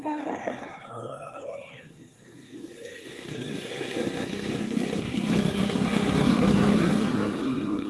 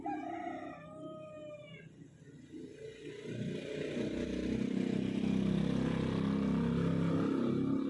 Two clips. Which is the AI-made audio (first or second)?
first